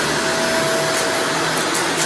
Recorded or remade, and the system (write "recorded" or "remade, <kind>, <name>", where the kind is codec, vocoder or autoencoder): recorded